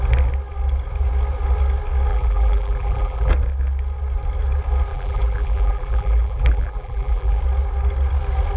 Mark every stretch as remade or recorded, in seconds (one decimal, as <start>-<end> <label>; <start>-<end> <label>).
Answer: 0.0-2.1 recorded; 2.1-3.3 remade; 3.3-4.9 recorded; 4.9-7.4 remade; 7.4-8.6 recorded